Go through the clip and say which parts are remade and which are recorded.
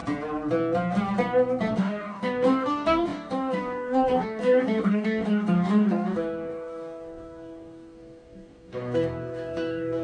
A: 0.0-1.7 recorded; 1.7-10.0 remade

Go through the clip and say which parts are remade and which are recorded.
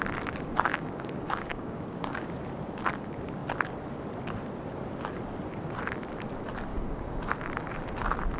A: 0.0-0.7 recorded; 0.7-2.3 remade; 2.3-6.7 recorded; 6.7-7.3 remade; 7.3-8.4 recorded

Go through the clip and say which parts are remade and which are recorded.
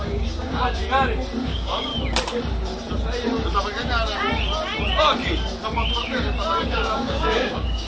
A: 0.0-0.8 remade; 0.8-1.4 recorded; 1.4-1.9 remade; 1.9-6.6 recorded; 6.6-7.9 remade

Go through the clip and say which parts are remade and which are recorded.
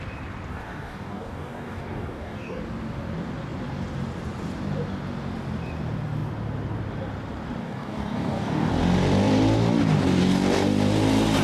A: 0.0-0.5 recorded; 0.5-2.6 remade; 2.6-7.6 recorded; 7.6-8.7 remade; 8.7-11.4 recorded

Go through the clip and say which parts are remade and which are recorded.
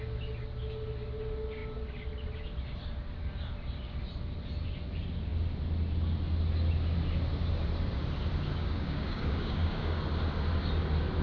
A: 0.0-8.6 recorded; 8.6-10.0 remade; 10.0-11.2 recorded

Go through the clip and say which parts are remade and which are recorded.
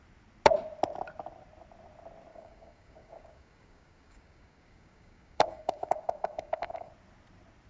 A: 0.0-2.3 recorded; 2.3-6.9 remade; 6.9-7.7 recorded